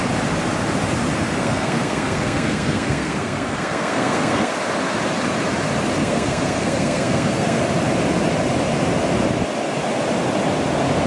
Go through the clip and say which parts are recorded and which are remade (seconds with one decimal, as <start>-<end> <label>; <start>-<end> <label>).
0.0-1.4 recorded; 1.4-4.5 remade; 4.5-6.0 recorded; 6.0-7.6 remade; 7.6-11.1 recorded